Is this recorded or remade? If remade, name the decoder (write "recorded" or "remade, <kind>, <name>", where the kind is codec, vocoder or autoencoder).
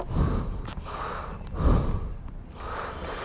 recorded